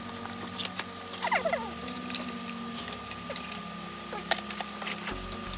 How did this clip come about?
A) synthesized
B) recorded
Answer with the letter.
B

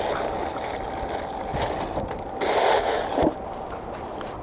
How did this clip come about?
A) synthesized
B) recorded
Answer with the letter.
B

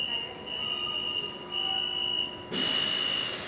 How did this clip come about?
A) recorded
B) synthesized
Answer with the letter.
A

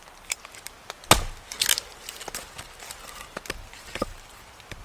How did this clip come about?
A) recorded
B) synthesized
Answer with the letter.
A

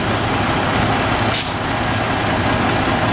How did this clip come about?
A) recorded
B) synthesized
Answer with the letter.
A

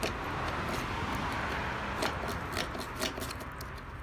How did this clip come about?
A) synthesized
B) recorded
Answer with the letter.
B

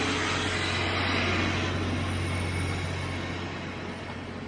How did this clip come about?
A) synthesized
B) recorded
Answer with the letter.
B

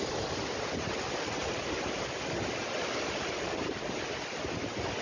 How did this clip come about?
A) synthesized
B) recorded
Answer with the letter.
B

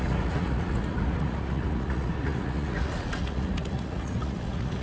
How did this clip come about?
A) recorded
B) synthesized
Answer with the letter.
B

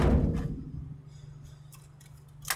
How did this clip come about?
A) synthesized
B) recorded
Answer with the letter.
B